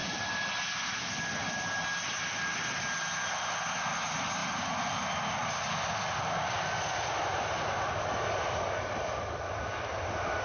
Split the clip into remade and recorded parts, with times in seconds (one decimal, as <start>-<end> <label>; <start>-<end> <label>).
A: 0.0-0.6 remade; 0.6-10.4 recorded